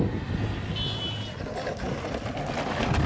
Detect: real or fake real